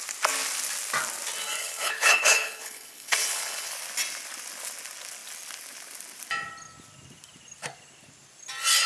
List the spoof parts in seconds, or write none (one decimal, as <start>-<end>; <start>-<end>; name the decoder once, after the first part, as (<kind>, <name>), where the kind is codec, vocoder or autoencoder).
1.6-3.7 (codec, HILCodec)